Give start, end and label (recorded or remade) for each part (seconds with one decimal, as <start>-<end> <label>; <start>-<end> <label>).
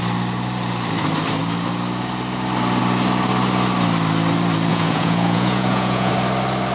0.0-4.7 recorded; 4.7-6.1 remade; 6.1-6.7 recorded